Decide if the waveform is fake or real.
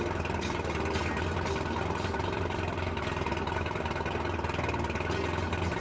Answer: real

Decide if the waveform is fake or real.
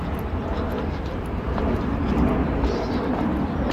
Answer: real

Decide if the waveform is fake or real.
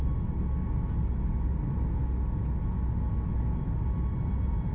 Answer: real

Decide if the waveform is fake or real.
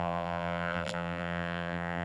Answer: fake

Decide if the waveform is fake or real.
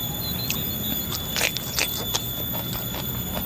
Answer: real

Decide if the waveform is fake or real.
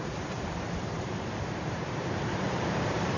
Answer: fake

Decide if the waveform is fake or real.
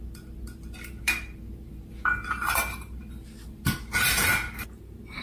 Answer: fake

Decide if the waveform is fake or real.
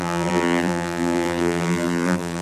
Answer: fake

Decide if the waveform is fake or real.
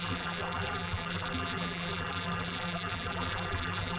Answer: fake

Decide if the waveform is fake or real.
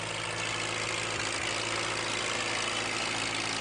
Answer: real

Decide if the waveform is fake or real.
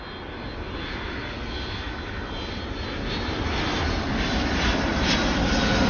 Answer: real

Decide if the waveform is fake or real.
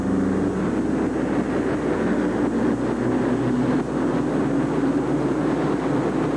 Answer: real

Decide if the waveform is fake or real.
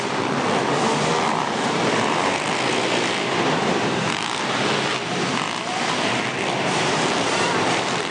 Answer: fake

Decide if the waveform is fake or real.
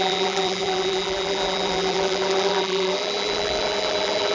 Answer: fake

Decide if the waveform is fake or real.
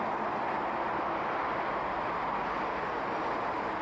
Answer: real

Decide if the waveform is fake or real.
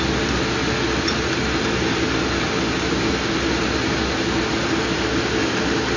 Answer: real